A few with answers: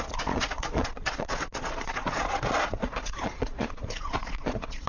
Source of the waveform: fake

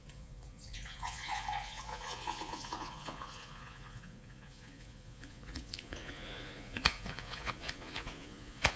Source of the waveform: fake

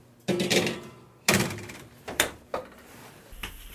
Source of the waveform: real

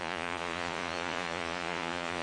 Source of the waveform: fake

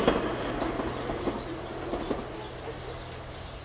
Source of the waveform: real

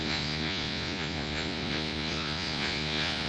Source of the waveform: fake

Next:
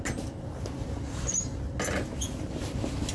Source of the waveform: real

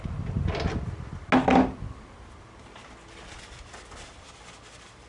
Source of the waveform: real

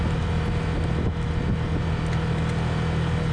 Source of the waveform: real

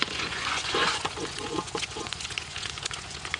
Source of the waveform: fake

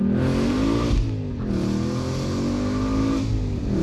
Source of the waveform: real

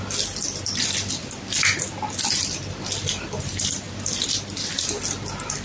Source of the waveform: real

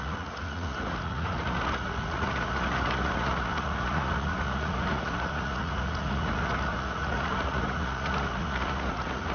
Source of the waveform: fake